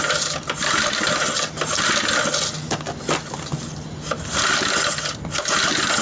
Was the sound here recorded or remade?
recorded